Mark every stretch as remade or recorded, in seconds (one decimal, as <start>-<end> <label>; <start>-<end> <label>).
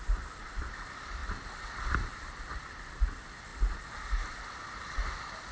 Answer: 0.0-5.5 recorded